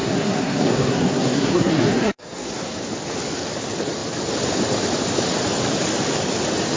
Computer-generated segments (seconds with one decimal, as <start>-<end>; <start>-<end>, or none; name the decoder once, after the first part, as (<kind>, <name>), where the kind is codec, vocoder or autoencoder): 0.0-2.8 (codec, SNAC)